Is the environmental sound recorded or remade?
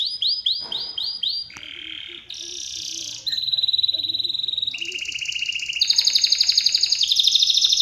recorded